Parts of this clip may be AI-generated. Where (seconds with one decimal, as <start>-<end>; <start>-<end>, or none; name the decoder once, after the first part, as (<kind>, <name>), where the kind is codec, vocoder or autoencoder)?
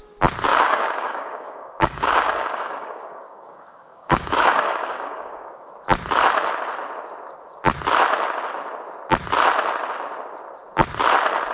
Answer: 0.5-5.7 (codec, DAC)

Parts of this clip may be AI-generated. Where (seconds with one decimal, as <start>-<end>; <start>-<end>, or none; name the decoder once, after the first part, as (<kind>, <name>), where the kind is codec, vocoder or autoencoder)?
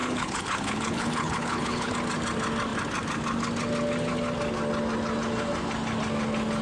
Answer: 0.0-1.9 (codec, HILCodec)